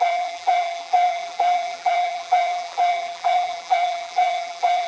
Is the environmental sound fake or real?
fake